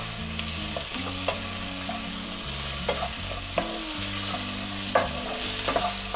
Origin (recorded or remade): recorded